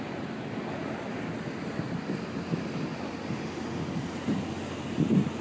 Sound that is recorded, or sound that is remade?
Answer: recorded